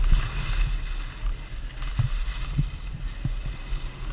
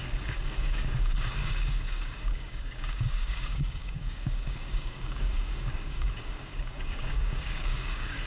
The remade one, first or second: second